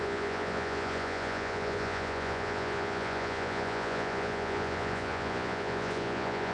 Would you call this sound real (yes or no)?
no